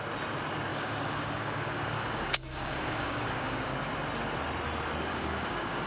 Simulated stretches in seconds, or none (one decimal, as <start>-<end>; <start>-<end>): 0.7-3.9; 5.1-5.9